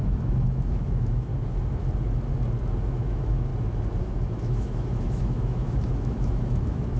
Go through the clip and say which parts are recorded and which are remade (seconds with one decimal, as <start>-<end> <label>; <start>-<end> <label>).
0.0-1.3 remade; 1.3-2.8 recorded; 2.8-3.5 remade; 3.5-4.0 recorded; 4.0-7.0 remade